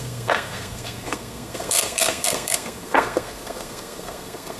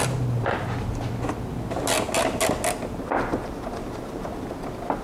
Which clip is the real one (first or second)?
second